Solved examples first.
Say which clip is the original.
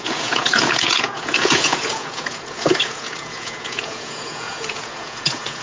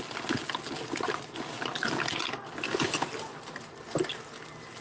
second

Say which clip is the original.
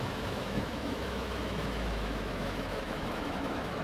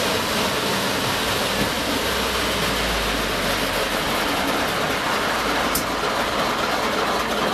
second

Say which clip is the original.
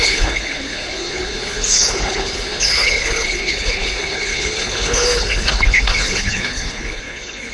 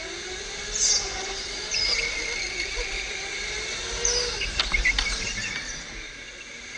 second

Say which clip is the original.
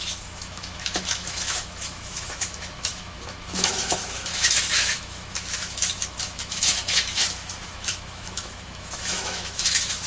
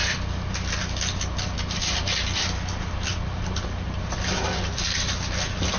second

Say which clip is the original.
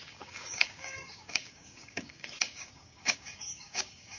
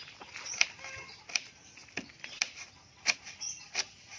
second